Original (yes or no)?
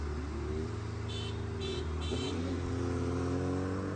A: yes